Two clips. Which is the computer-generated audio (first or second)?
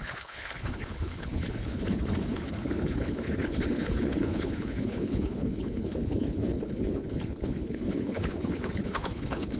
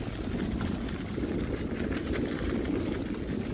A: first